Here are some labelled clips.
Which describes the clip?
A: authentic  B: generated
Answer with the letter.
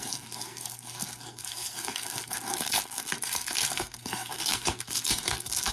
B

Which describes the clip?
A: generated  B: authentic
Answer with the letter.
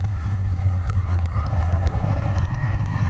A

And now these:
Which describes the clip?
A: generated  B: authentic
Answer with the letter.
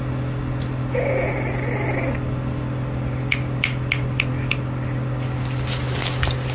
B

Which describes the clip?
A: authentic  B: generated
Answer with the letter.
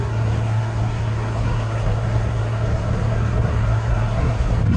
B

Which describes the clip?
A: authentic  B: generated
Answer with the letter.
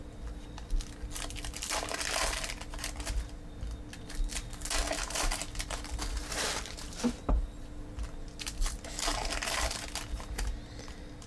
A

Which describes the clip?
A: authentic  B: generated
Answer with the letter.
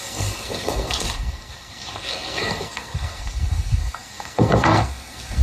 B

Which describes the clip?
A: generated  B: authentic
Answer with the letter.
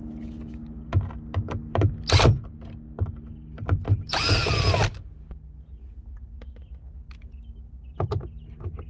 B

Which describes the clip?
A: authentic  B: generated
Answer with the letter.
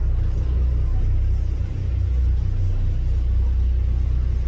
A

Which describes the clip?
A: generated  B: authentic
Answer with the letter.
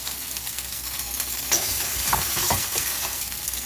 A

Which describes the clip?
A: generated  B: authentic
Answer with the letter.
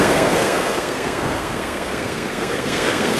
A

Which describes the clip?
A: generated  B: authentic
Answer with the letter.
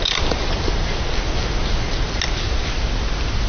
B